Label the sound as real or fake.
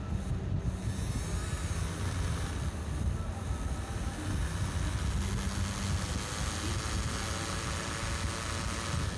real